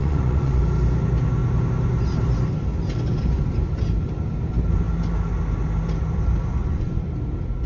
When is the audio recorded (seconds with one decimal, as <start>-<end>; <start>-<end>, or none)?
0.6-6.6; 7.1-7.7